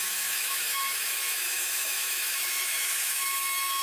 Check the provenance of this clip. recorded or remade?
remade